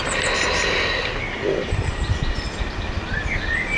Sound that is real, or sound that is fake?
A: real